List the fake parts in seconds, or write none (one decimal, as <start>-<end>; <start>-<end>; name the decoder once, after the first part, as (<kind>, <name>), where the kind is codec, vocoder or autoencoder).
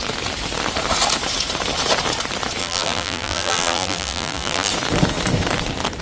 2.6-4.7 (vocoder, BigVGAN v2)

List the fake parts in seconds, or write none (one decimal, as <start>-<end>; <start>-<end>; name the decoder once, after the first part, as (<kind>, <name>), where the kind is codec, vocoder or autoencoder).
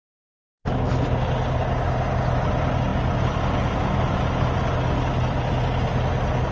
none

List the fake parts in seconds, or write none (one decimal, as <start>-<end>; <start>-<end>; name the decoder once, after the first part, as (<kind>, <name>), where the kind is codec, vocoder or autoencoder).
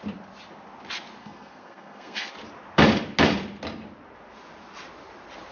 1.2-2.3 (codec, SNAC)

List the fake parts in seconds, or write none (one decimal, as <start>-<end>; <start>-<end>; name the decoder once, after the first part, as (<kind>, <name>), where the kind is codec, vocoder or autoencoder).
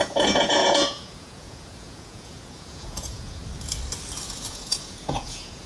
0.0-3.4 (vocoder, Vocos); 4.5-5.7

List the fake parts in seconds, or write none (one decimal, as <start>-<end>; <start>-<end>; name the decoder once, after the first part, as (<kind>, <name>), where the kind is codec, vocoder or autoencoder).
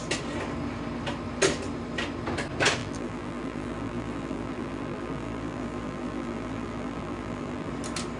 2.8-7.7 (vocoder, BigVGAN v2)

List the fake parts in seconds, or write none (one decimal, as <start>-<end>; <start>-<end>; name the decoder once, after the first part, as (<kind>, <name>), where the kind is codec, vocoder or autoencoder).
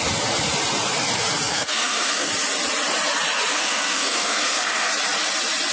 1.5-2.3 (codec, SNAC); 3.5-4.9